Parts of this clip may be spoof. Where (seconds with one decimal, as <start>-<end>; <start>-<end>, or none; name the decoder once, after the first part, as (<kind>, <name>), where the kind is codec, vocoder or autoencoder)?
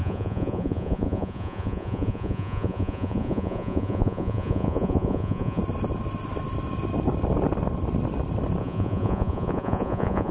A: 0.0-5.6 (vocoder, Vocos); 8.6-10.3